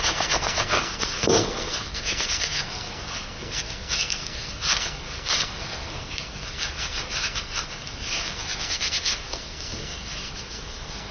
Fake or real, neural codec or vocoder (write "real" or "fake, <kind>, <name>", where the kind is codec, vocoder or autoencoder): fake, codec, SNAC